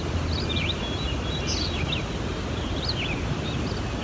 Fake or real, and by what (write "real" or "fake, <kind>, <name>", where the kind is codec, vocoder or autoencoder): real